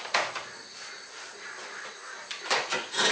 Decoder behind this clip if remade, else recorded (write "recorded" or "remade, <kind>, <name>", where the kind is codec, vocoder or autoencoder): recorded